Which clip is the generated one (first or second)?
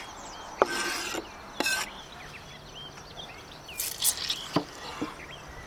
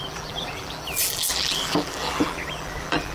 second